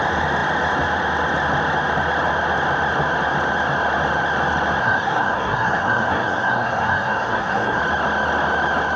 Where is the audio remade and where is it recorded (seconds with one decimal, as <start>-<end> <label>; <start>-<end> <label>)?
0.0-4.8 recorded; 4.8-7.8 remade; 7.8-9.0 recorded